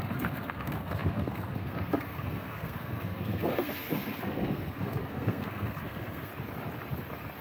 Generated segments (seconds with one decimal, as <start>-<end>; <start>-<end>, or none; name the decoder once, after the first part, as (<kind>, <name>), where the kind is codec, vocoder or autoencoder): 0.0-6.3 (codec, SNAC)